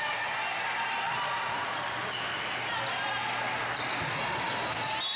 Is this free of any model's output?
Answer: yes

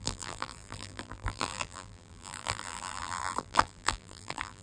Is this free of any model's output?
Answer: no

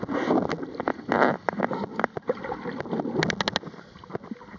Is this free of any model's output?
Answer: yes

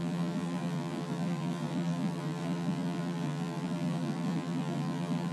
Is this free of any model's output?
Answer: no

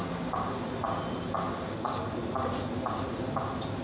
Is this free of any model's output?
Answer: yes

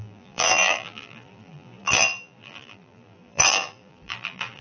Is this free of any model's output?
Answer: no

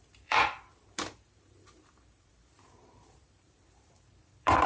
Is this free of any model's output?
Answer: no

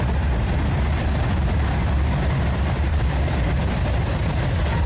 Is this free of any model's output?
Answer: no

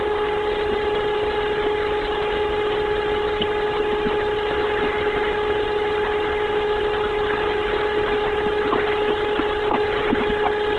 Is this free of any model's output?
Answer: yes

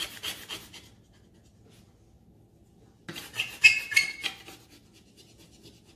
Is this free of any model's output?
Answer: yes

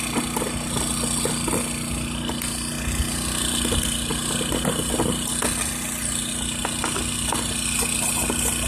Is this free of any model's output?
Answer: yes